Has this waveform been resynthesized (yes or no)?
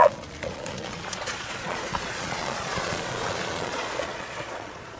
yes